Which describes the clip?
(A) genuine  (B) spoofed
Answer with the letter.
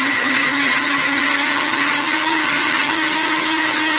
B